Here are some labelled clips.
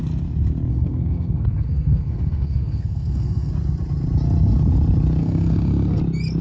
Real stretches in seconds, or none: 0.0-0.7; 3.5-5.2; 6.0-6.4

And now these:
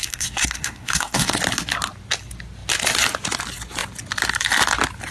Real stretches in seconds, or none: 1.4-5.1

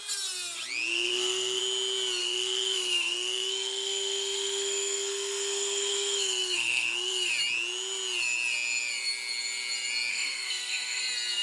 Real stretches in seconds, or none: 0.0-0.9; 1.6-2.2; 7.3-10.1; 11.0-11.4